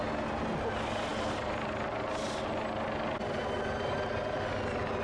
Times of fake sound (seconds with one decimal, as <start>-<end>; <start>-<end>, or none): none